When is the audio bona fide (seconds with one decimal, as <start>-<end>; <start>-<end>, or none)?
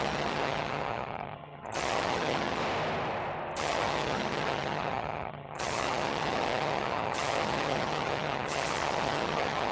2.6-3.6